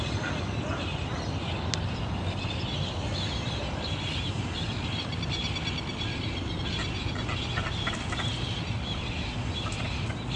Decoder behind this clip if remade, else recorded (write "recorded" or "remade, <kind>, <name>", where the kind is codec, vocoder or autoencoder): recorded